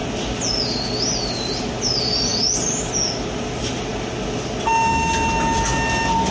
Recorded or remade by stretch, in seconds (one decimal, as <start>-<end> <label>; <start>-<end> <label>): 0.0-6.3 recorded